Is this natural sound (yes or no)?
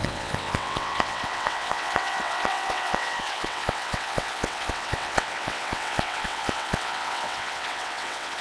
no